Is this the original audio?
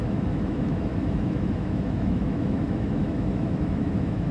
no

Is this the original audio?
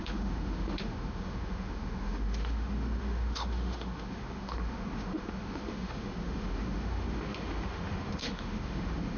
no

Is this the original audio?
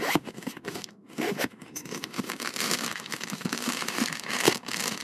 no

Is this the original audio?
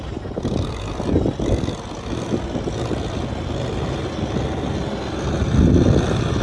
yes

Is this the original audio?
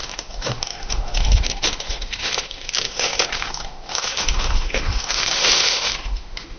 no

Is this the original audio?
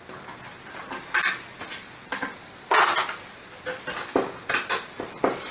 yes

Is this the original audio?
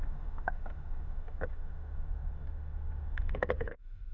no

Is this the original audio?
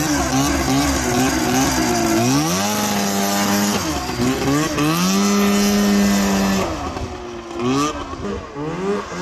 yes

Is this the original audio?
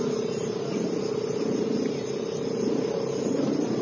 yes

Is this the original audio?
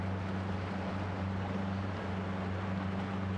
yes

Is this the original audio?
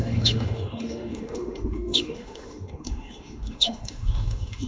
no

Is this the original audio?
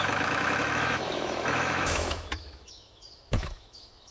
no